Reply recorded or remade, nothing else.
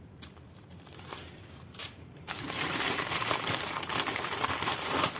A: remade